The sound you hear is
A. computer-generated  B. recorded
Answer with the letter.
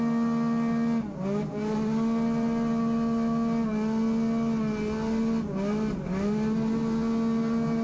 B